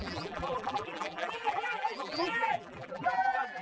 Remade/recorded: remade